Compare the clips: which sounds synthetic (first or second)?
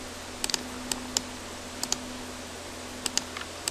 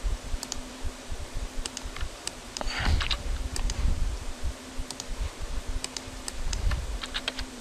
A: second